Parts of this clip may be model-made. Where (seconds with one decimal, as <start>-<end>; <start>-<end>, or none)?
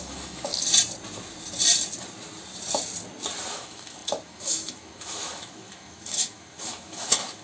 0.0-0.5; 3.5-7.4